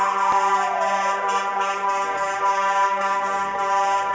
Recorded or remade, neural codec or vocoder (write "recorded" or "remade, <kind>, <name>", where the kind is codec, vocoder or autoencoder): recorded